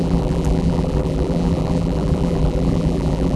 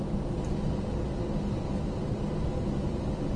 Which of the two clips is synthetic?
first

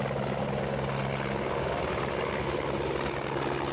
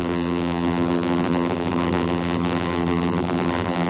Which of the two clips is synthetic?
second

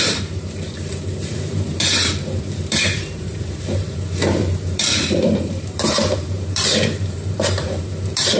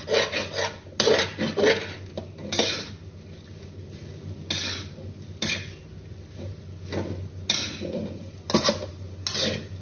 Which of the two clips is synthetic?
first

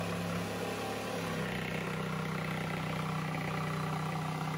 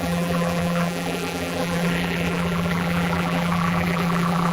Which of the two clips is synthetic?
second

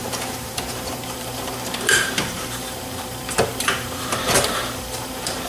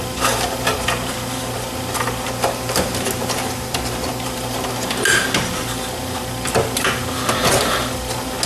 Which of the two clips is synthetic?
first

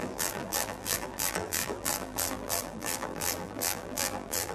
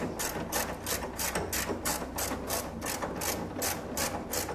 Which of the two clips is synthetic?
first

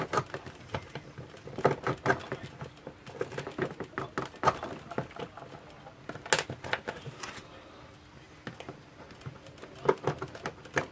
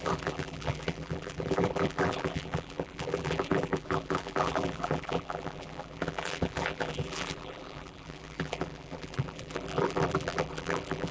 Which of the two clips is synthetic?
second